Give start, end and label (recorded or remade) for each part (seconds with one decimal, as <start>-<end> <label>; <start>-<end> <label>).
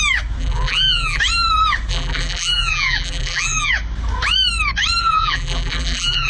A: 0.0-0.4 recorded; 0.4-1.2 remade; 1.2-1.9 recorded; 1.9-3.7 remade; 3.7-5.0 recorded; 5.0-6.3 remade